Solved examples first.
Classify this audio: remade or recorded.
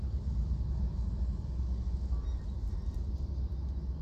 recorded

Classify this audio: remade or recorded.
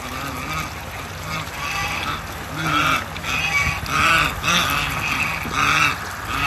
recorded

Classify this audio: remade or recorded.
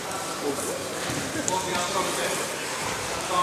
remade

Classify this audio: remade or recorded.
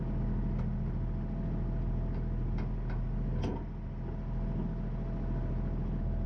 recorded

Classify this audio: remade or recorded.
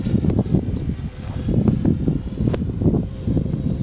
remade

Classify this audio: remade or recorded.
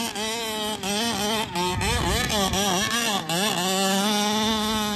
recorded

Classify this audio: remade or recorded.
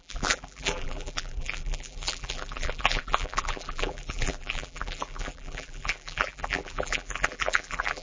remade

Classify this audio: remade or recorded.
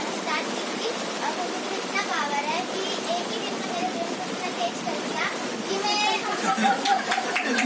remade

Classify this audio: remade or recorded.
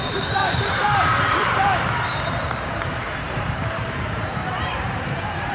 remade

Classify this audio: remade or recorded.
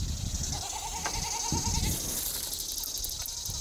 recorded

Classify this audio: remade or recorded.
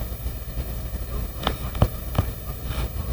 recorded